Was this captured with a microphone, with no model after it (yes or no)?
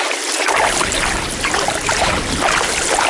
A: yes